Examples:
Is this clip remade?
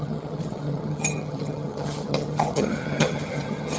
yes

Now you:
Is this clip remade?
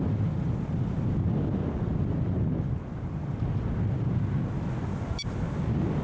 no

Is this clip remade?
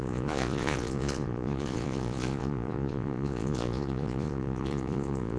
yes